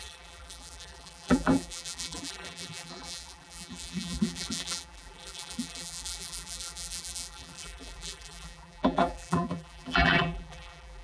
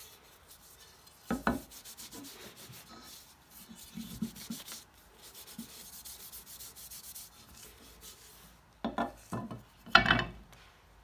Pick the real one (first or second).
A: second